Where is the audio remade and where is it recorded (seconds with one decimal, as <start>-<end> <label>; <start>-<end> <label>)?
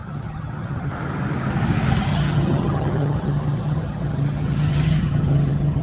0.0-0.9 remade; 0.9-2.1 recorded; 2.1-5.8 remade